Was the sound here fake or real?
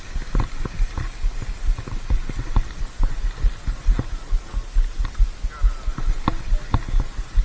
real